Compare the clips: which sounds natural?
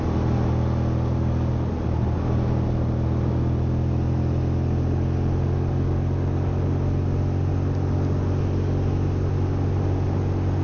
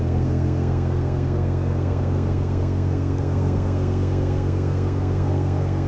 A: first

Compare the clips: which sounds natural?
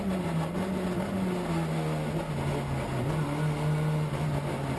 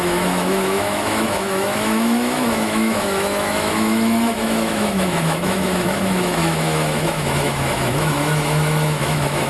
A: first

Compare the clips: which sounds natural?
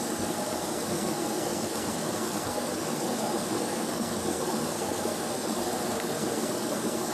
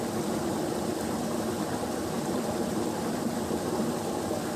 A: second